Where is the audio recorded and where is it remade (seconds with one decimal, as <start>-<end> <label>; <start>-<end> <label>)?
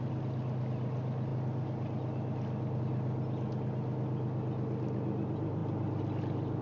0.0-6.6 recorded